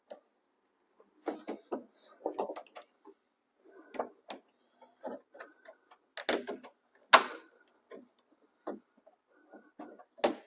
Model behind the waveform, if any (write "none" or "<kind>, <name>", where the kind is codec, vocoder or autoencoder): none